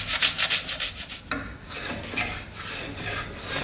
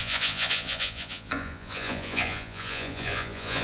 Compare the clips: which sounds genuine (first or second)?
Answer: first